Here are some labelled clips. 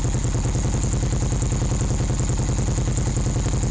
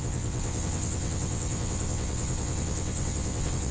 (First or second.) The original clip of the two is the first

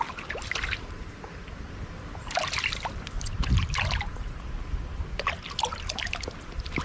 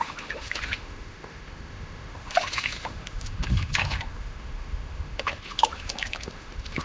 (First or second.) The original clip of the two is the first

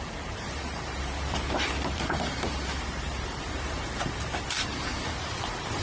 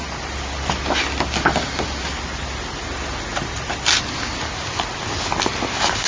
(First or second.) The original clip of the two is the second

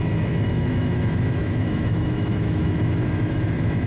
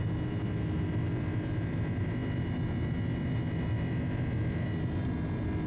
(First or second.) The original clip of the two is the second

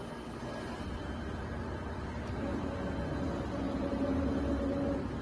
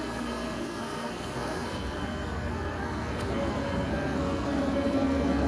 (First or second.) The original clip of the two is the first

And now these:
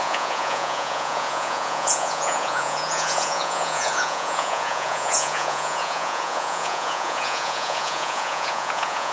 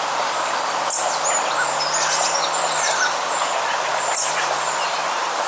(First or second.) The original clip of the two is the second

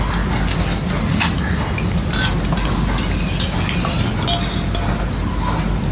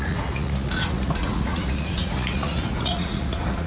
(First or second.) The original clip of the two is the first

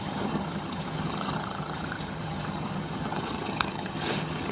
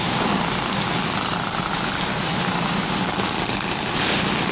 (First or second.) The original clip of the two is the second